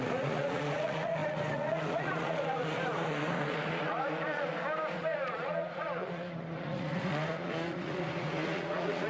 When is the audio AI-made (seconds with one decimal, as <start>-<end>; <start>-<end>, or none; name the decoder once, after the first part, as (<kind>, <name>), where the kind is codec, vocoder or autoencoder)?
0.0-4.5 (vocoder, Vocos); 5.0-9.1